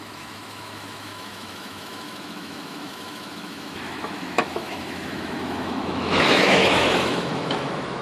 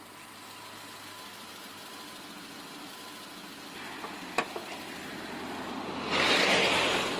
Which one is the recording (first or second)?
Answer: second